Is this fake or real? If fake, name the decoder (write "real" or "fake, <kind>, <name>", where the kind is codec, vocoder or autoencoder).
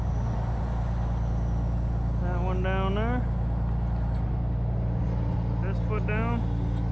real